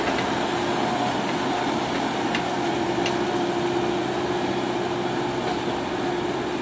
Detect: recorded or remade recorded